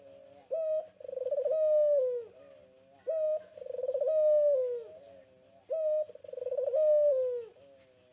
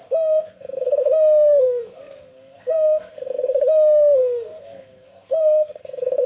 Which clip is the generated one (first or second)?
second